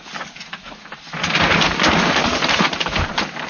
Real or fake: real